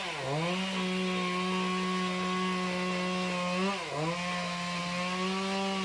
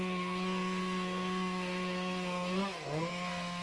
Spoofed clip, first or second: second